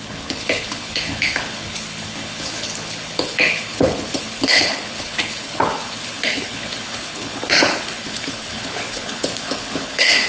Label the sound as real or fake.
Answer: fake